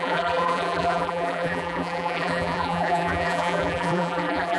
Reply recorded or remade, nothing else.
remade